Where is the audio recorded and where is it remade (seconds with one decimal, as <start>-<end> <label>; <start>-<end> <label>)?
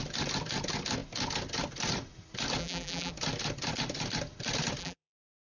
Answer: 0.0-2.6 recorded; 2.6-3.1 remade; 3.1-4.8 recorded; 4.8-5.4 remade